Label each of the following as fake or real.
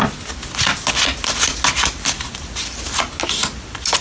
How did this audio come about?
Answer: real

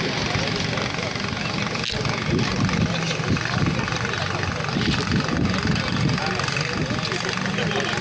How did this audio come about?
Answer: real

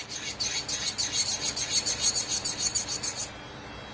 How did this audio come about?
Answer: real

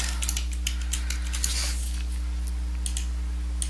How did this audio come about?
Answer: real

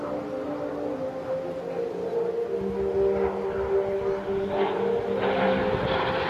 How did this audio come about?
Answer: real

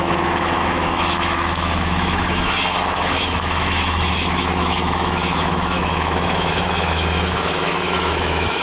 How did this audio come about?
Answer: fake